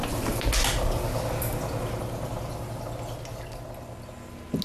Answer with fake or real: real